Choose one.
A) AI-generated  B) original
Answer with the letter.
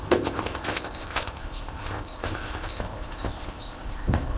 A